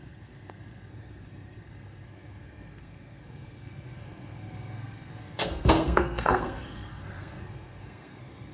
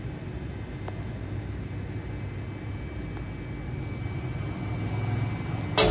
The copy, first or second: first